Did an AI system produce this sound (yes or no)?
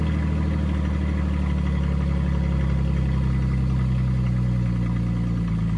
no